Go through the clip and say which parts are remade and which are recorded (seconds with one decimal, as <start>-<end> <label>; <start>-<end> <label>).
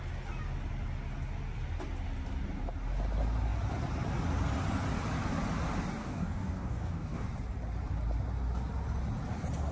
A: 0.0-6.0 recorded; 6.0-7.3 remade; 7.3-9.7 recorded